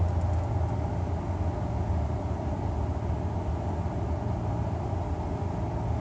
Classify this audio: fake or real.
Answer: real